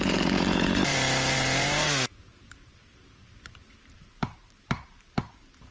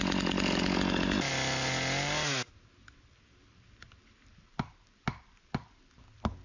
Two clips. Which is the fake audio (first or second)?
first